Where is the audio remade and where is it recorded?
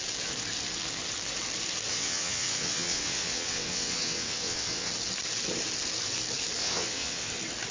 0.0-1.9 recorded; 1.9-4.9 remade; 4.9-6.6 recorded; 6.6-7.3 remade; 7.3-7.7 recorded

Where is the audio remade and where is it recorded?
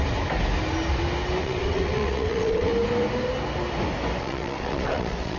0.0-1.4 recorded; 1.4-2.7 remade; 2.7-4.2 recorded; 4.2-5.4 remade